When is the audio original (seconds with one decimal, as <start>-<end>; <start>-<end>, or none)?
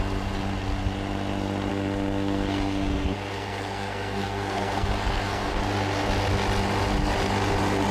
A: 0.0-1.7; 5.6-7.9